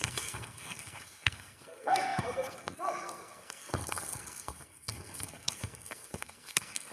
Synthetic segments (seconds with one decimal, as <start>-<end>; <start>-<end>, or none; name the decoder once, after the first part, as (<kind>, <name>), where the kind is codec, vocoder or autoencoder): 0.0-6.9 (codec, SNAC)